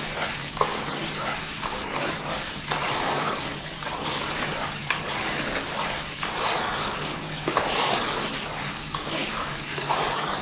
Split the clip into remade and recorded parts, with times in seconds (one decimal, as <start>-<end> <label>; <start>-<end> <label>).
0.0-10.4 remade